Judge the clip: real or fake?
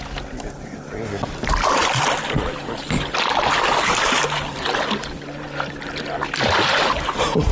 real